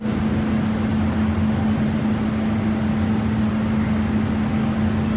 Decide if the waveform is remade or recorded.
recorded